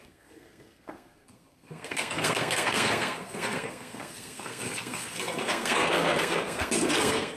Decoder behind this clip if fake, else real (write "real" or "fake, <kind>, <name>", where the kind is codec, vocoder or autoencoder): fake, codec, SNAC